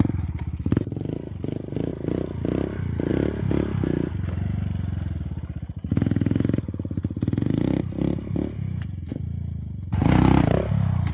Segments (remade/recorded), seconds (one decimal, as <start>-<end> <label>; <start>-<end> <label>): 0.0-11.1 recorded